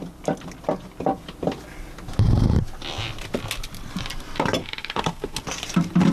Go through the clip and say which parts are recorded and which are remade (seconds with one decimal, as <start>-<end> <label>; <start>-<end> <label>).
0.0-4.6 recorded; 4.6-5.4 remade; 5.4-6.1 recorded